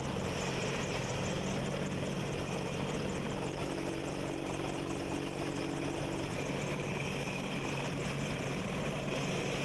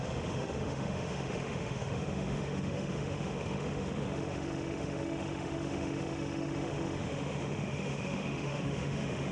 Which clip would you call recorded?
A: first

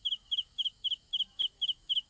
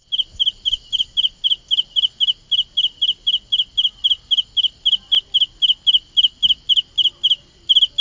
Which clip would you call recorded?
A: second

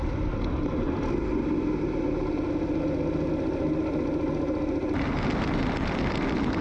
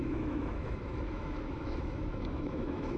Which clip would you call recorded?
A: first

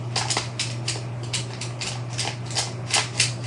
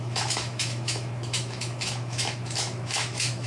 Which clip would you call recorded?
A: first